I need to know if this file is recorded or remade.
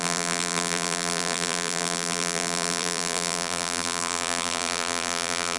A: remade